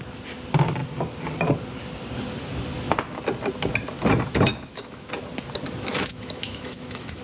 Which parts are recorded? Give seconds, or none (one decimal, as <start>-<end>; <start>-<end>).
0.0-4.5; 5.1-5.9